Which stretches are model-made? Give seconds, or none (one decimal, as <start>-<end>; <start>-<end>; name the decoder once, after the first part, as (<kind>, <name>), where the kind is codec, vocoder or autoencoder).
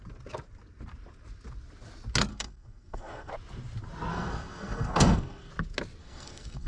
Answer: 2.3-3.3 (codec, SNAC); 4.1-5.5; 6.0-6.7